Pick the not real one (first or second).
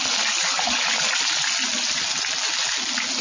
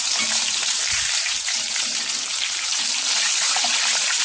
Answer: second